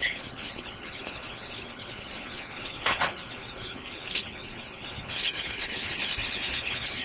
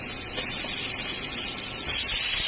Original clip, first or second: second